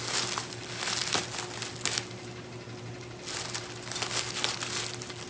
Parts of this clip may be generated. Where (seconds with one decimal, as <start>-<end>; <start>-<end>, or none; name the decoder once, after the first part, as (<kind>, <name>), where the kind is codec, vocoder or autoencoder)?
none